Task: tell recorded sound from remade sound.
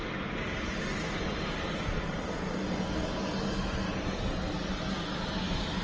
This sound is recorded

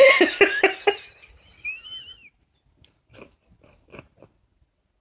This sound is recorded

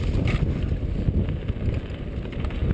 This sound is recorded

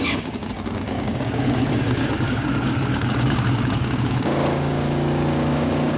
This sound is remade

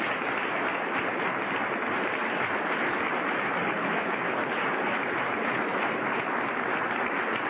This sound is recorded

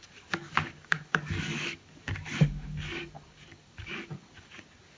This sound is remade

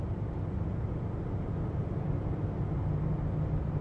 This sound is recorded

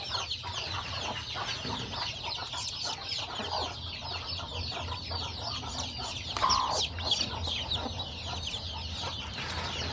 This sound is recorded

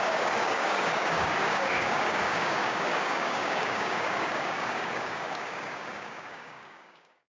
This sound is remade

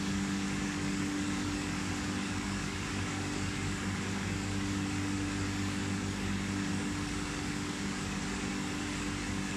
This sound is remade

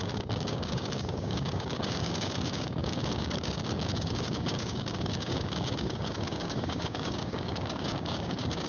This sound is remade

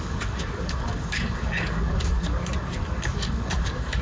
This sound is remade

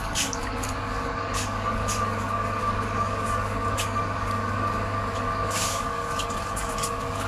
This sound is remade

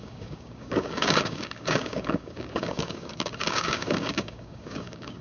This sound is remade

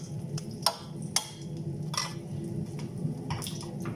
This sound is recorded